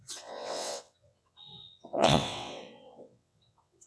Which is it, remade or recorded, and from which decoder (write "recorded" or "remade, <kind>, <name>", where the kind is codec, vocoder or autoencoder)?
remade, vocoder, WaveNeXt